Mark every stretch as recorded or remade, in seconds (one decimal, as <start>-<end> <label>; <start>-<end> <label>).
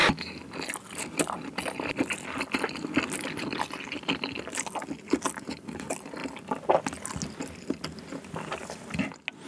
0.0-9.5 recorded